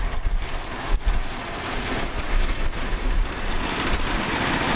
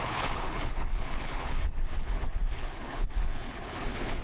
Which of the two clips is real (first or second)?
first